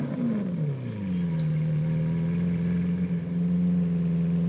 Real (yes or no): yes